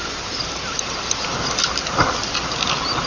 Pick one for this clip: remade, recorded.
recorded